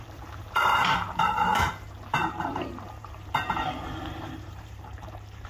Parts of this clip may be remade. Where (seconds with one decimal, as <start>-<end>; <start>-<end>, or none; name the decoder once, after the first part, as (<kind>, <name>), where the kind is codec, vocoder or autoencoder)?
0.0-1.5 (vocoder, BigVGAN v2); 2.4-5.5